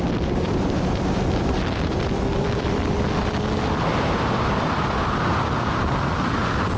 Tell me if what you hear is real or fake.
fake